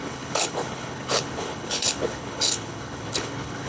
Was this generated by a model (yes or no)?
yes